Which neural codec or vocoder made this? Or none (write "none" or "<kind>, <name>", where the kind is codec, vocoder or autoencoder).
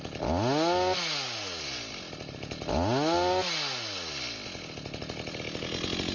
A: none